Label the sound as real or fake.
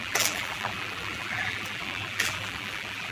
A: fake